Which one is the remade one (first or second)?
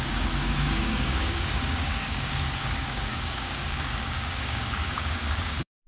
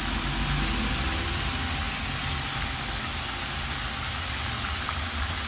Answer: first